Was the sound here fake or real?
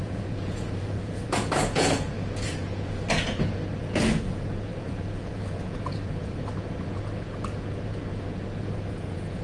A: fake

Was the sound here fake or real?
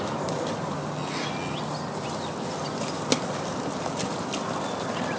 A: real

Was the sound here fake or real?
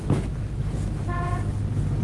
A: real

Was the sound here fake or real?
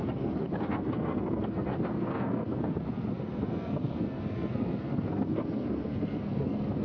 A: fake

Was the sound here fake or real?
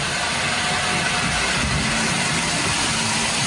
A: real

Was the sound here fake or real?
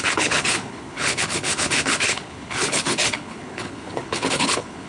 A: fake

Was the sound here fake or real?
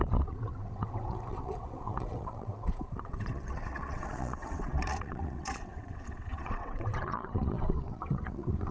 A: fake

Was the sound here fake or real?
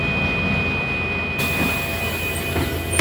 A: real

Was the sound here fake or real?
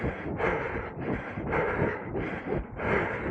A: real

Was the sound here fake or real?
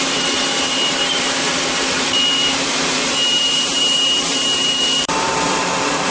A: fake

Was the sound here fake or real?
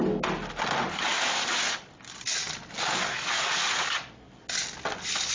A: real